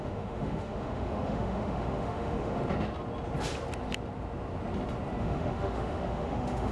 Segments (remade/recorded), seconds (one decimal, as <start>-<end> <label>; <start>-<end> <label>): 0.0-2.6 remade; 2.6-5.2 recorded; 5.2-6.7 remade